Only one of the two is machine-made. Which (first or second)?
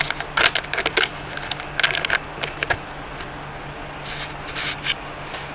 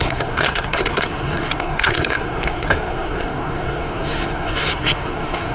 second